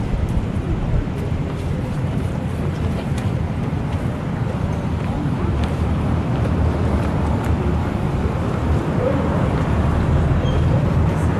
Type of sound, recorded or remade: remade